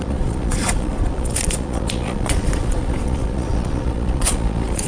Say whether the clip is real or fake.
fake